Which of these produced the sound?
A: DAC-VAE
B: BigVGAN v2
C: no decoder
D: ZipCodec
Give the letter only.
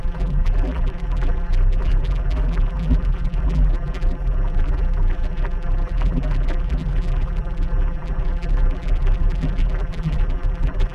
B